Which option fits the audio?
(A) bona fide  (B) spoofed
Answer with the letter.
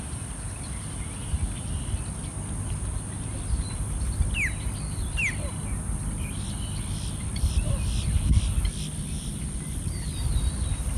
A